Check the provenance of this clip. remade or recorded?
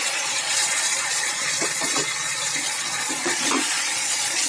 remade